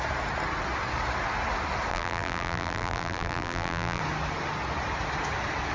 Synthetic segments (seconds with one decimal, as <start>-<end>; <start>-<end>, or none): 1.9-4.0